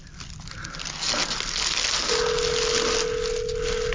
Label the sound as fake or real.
real